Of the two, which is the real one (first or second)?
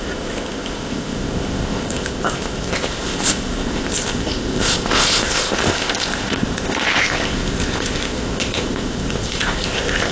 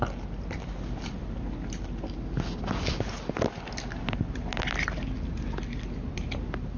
second